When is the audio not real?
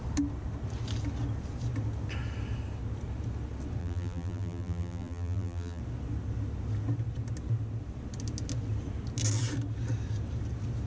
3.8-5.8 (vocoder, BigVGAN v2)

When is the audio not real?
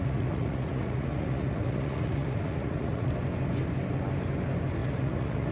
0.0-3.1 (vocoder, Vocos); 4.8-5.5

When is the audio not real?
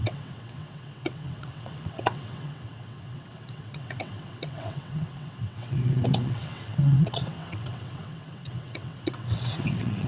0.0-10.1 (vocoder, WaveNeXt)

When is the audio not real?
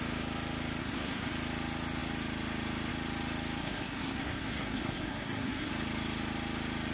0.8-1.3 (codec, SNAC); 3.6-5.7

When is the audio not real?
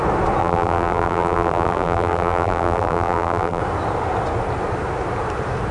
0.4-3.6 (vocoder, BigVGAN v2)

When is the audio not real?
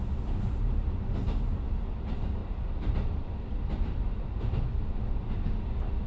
2.4-3.5 (vocoder, BigVGAN v2)